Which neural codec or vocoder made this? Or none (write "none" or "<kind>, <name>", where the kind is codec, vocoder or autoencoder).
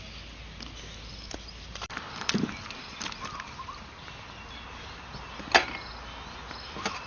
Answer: none